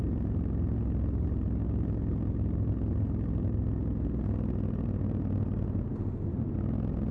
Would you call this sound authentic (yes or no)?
yes